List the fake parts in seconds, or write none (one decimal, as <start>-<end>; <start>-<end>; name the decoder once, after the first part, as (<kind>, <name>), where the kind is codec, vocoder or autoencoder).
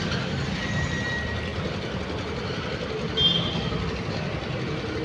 none